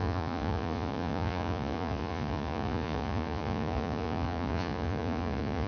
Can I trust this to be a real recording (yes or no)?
no